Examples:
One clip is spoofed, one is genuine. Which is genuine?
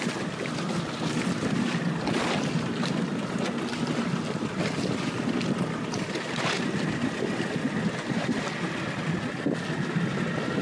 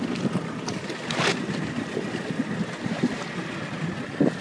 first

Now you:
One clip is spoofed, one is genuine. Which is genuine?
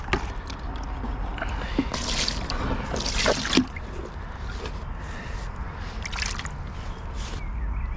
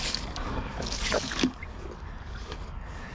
first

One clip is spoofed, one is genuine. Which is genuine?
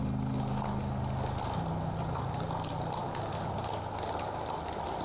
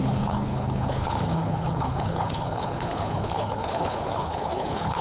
first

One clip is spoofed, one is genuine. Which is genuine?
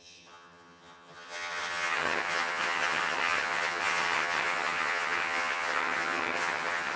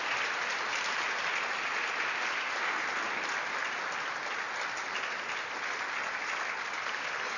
second